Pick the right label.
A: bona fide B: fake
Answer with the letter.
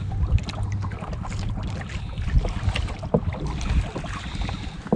A